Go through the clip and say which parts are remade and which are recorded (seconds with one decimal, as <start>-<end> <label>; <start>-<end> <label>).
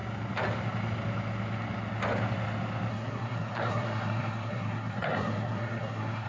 0.0-2.9 recorded; 2.9-6.3 remade